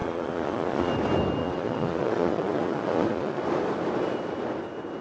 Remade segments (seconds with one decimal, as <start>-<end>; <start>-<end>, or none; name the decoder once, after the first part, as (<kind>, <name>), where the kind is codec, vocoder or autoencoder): 0.0-0.9 (vocoder, Vocos); 1.4-3.4